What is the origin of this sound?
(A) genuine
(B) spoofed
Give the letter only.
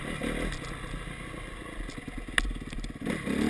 A